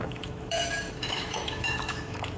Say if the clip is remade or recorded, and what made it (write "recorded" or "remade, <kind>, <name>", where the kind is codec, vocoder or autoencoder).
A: remade, autoencoder, DAC-VAE